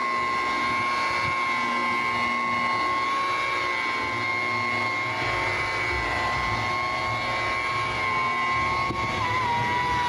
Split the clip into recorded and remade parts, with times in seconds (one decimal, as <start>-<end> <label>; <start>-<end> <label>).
0.0-10.1 recorded